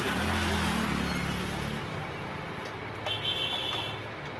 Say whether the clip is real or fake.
real